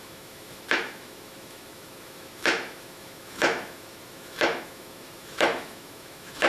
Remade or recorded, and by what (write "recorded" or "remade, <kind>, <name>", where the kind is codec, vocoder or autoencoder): remade, autoencoder, DAC-VAE